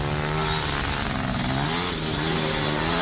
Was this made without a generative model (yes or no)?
yes